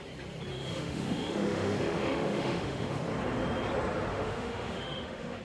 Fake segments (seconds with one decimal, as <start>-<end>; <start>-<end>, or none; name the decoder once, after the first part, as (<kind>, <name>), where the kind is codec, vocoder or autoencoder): 0.5-3.0 (autoencoder, DAC-VAE); 4.1-5.4

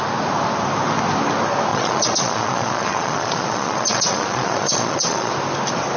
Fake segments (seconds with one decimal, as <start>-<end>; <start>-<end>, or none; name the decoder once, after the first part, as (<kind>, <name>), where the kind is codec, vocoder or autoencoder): 1.7-5.3 (vocoder, Vocos)

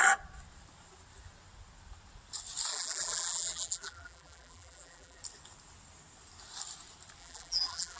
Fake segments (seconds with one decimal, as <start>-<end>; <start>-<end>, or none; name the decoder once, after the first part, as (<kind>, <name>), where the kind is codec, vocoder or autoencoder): 2.7-5.2 (vocoder, BigVGAN v2); 7.2-8.0